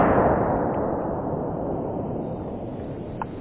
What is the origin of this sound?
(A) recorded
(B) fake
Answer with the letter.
A